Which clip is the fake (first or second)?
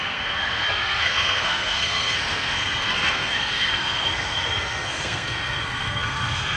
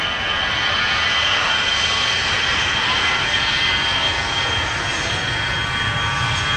first